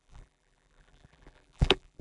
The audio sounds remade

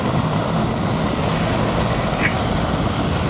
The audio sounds recorded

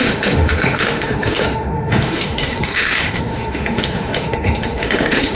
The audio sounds remade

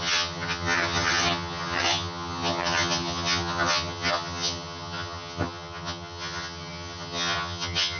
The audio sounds remade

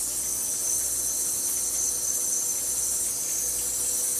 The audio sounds recorded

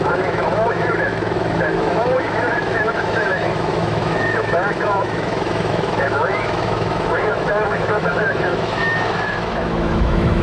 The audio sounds remade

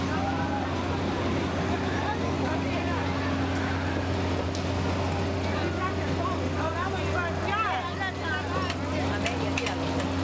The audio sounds recorded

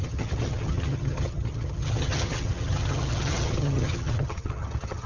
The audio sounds remade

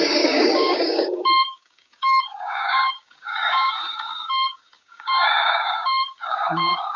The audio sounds remade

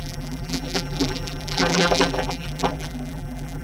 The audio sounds remade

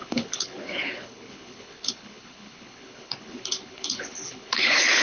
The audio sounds remade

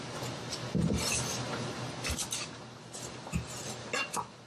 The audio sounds recorded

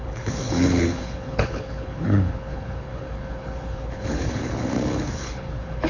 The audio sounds remade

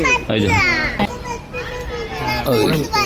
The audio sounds recorded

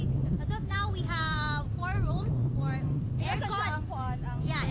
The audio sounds recorded